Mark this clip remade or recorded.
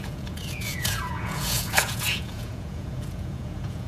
remade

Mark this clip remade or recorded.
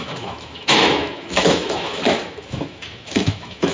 remade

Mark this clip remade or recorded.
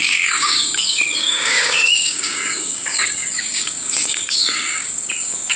remade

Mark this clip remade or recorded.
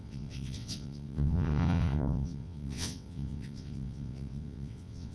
remade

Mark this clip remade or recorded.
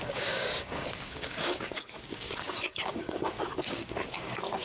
remade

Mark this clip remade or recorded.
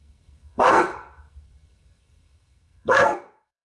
remade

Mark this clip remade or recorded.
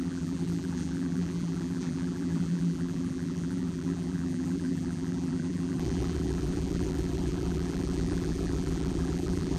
remade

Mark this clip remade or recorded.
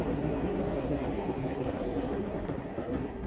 remade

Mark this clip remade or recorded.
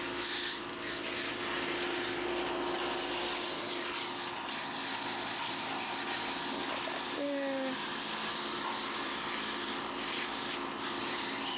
recorded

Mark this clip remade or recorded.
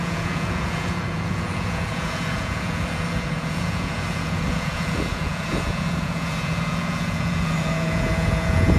remade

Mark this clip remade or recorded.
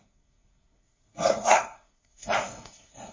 remade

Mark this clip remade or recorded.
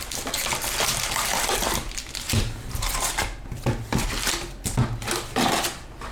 recorded